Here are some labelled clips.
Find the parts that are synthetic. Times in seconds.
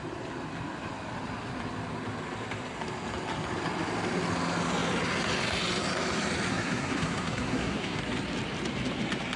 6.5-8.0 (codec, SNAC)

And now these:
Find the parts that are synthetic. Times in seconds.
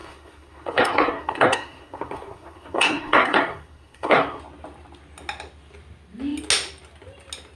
0.0-4.4 (codec, SNAC)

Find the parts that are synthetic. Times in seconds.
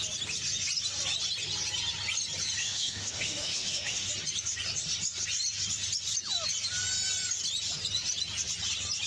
2.6-4.1 (autoencoder, DAC-VAE)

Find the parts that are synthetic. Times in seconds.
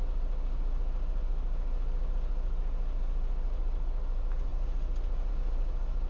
none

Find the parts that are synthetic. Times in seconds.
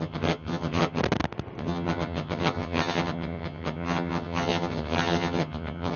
0.0-1.0 (vocoder, HiFi-GAN); 1.6-6.0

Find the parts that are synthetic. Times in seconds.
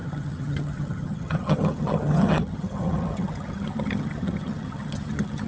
0.0-5.5 (vocoder, HiFi-GAN)